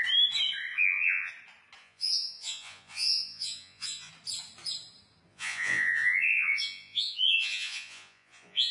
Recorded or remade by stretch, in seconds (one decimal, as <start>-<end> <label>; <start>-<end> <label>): 0.0-0.7 recorded; 0.7-1.3 remade; 1.3-1.8 recorded; 1.8-4.1 remade; 4.1-5.3 recorded; 5.3-8.7 remade